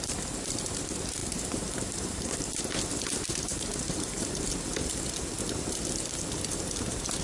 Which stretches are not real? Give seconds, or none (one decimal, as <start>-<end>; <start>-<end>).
1.2-2.6; 3.5-4.3